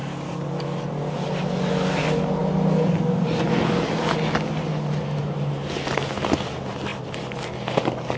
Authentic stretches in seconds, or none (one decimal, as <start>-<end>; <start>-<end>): 0.0-8.2